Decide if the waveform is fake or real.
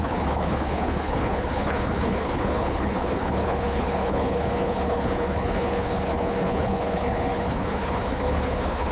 fake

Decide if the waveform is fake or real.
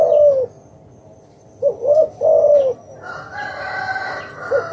real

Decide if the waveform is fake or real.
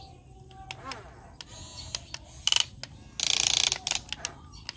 real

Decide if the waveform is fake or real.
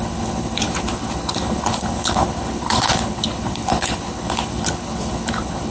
fake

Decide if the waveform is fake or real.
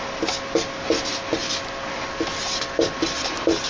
real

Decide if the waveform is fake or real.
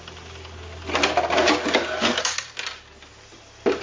real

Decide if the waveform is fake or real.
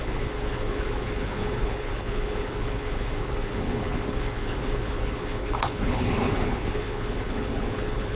fake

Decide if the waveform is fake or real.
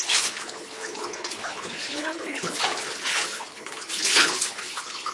fake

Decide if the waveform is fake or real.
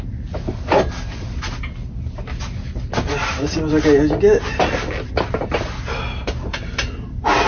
real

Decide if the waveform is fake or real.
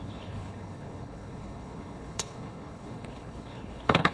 fake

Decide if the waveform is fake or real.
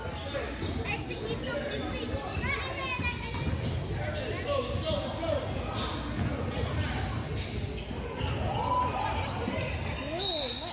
real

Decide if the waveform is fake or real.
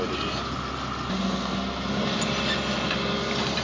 real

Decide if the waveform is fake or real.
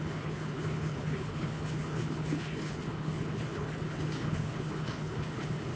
fake